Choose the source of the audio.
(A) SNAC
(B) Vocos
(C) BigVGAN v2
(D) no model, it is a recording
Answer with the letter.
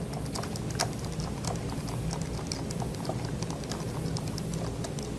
D